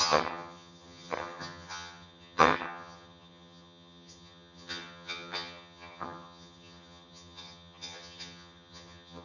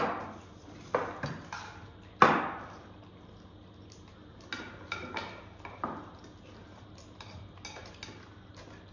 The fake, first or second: first